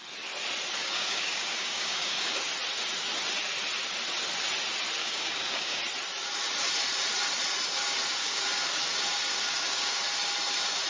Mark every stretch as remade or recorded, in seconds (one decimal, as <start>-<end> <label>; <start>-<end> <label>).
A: 0.0-0.8 recorded; 0.8-2.4 remade; 2.4-5.0 recorded; 5.0-5.8 remade; 5.8-8.2 recorded; 8.2-8.8 remade; 8.8-9.3 recorded; 9.3-10.0 remade; 10.0-10.9 recorded